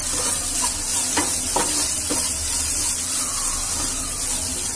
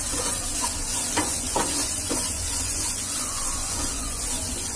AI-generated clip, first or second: second